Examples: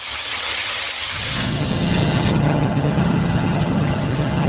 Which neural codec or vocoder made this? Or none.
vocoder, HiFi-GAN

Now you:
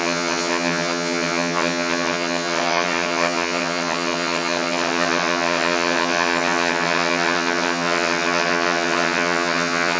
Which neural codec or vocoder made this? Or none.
vocoder, HiFi-GAN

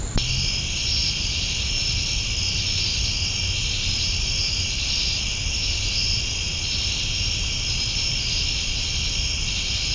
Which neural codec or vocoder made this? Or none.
none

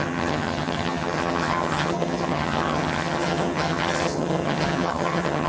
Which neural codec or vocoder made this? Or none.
vocoder, HiFi-GAN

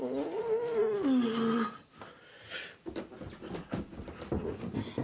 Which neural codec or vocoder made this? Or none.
none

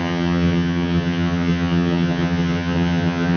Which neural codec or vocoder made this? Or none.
vocoder, HiFi-GAN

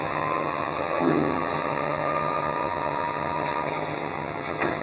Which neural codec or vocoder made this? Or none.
vocoder, HiFi-GAN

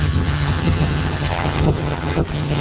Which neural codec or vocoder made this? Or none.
vocoder, HiFi-GAN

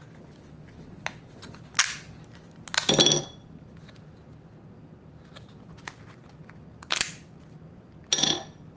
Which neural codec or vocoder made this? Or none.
none